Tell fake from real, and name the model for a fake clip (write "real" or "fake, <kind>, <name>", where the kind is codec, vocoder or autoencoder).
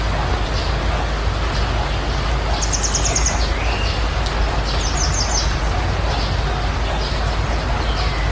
real